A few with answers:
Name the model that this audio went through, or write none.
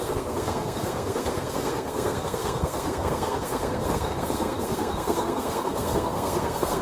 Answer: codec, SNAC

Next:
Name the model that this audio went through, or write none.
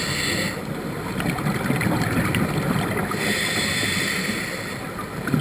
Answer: none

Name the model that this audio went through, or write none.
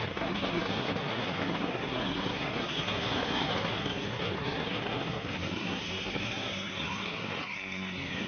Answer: codec, SNAC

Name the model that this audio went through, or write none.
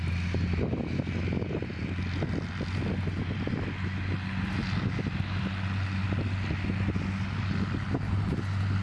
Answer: none